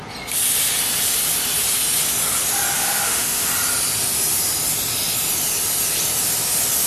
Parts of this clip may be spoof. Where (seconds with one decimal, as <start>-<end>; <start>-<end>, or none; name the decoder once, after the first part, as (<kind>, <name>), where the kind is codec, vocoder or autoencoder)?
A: 2.8-3.5 (autoencoder, DAC-VAE)